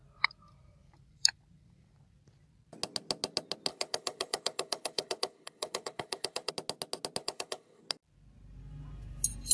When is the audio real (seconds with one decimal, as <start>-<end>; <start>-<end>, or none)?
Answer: 0.0-3.7; 6.5-7.2; 7.8-9.5